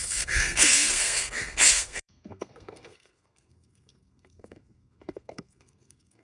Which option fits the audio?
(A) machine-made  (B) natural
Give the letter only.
A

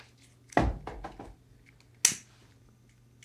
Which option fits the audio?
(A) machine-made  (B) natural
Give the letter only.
B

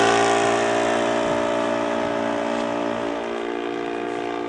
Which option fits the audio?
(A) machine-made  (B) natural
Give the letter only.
B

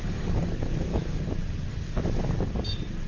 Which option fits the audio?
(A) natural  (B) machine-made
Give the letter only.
A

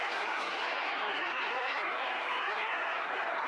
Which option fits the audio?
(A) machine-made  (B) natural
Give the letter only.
A